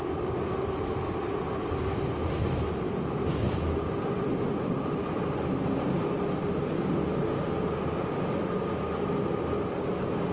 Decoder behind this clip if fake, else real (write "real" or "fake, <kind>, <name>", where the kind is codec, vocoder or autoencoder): real